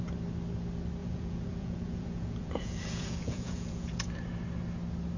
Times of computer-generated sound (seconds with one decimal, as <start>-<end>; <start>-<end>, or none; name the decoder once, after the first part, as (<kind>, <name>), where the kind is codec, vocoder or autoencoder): 1.0-4.1 (vocoder, Vocos)